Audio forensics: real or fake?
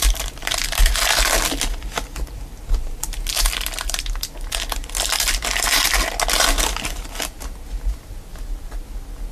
real